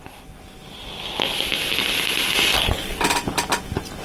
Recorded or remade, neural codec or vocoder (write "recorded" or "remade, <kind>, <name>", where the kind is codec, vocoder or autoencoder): recorded